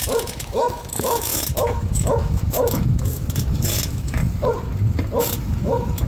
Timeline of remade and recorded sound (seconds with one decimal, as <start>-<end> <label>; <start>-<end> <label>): 0.0-4.2 remade; 4.2-5.3 recorded; 5.3-6.1 remade